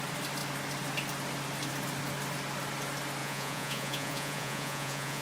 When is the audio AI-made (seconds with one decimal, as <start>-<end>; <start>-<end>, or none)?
3.2-5.2

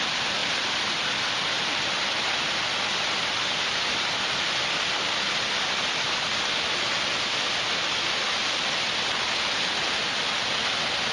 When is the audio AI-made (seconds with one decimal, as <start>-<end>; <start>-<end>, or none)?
none

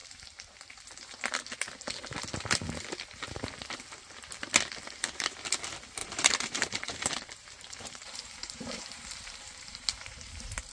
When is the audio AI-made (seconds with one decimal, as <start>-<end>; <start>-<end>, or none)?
0.0-0.8; 6.0-10.7

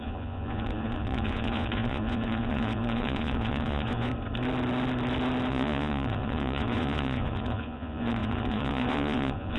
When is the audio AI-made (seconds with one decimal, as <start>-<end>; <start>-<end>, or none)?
0.0-4.1; 5.5-9.6

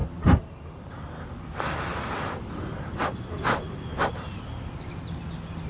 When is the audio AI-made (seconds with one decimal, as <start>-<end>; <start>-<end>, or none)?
none

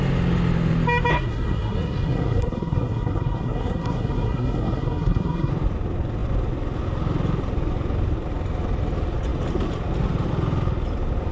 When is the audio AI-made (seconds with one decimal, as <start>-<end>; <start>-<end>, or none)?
1.1-5.5